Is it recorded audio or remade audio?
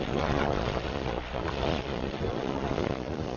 remade